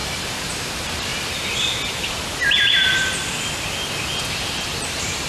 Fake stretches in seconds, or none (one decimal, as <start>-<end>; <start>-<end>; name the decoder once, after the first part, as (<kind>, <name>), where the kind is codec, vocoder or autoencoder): 0.0-1.1 (vocoder, BigVGAN v2); 4.3-5.3